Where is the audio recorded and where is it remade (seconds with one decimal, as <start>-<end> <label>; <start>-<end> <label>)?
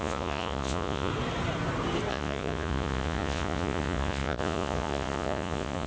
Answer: 0.0-1.1 remade; 1.1-2.1 recorded; 2.1-5.9 remade